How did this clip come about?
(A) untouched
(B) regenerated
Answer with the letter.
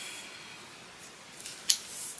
A